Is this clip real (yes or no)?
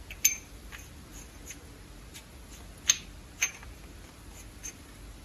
yes